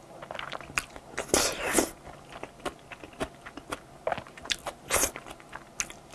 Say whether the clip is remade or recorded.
recorded